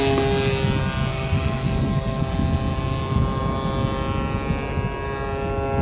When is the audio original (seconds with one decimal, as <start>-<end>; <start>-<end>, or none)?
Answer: 0.0-1.1; 2.2-5.8